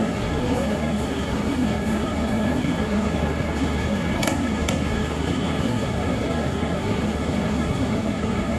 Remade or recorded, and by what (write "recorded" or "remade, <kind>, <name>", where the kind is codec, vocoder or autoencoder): remade, codec, SNAC